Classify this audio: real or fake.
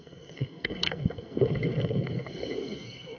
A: fake